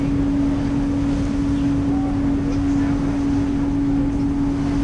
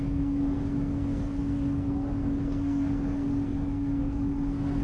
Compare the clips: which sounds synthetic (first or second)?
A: second